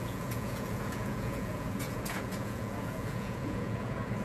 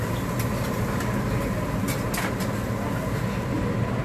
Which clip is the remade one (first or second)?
first